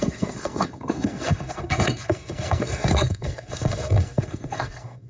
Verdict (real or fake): fake